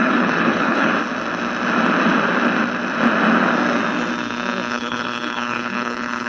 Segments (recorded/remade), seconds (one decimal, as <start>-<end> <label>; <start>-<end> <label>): 0.0-0.9 remade; 0.9-4.7 recorded; 4.7-6.3 remade